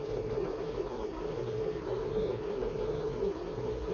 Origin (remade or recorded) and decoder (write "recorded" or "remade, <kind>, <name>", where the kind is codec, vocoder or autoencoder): remade, codec, SNAC